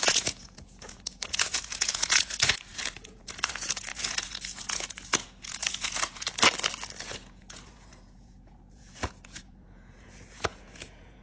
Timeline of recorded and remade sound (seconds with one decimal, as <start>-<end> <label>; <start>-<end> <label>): 0.0-6.3 remade; 6.3-7.0 recorded; 7.0-11.2 remade